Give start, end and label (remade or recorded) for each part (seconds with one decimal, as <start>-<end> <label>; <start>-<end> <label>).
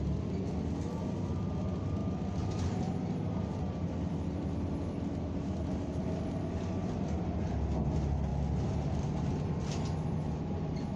0.0-11.0 recorded